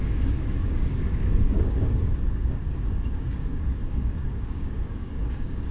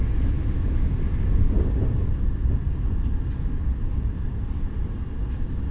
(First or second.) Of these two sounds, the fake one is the first